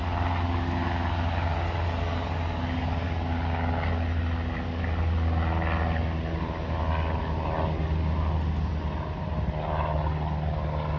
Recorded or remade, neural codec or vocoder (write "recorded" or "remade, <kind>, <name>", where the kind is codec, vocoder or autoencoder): recorded